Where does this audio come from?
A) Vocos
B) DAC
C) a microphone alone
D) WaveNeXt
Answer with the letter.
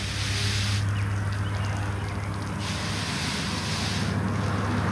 C